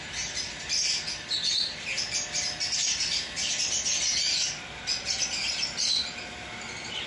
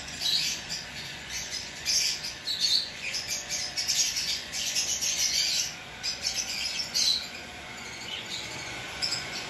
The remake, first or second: second